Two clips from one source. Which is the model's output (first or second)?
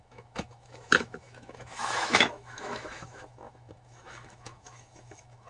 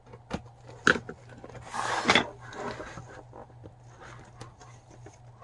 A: first